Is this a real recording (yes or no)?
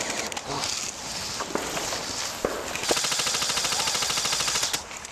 yes